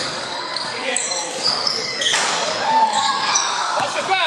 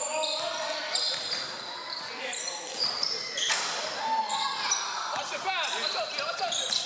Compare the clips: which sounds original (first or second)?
second